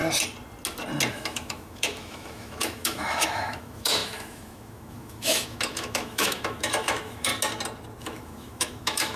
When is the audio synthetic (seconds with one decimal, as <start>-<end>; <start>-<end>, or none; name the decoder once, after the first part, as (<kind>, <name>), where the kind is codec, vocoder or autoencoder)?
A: 1.1-7.3 (autoencoder, DAC-VAE); 8.0-9.2

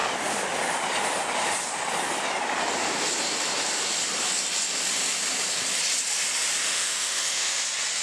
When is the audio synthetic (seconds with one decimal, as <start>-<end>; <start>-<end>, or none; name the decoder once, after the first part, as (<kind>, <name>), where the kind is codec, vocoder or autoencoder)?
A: 6.6-7.6 (autoencoder, DAC-VAE)

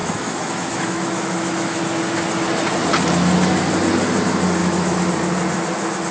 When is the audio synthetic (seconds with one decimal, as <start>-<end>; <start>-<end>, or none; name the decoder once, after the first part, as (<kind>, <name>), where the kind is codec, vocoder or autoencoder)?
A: 0.0-1.8 (autoencoder, DAC-VAE); 4.6-5.1

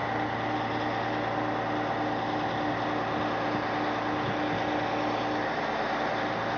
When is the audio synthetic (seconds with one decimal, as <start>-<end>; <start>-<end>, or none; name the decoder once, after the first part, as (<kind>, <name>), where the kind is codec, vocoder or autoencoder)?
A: none

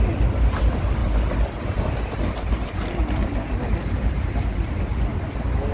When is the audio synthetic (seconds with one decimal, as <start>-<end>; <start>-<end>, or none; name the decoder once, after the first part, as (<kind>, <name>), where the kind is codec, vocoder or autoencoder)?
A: none

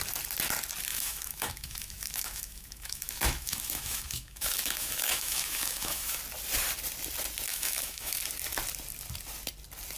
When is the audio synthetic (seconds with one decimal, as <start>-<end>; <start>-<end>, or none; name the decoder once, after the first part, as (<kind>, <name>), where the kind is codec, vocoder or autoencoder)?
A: 0.9-6.2 (autoencoder, DAC-VAE); 7.5-8.2

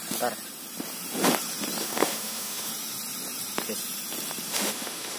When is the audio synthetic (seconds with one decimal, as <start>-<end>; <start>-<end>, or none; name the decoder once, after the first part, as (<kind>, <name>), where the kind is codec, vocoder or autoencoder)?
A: 1.8-2.7 (autoencoder, DAC-VAE); 4.5-5.2

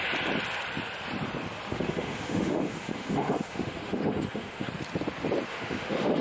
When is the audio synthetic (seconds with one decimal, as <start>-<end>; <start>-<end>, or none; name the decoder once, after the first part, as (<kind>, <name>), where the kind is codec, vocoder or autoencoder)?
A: 1.7-4.7 (autoencoder, DAC-VAE); 5.5-6.2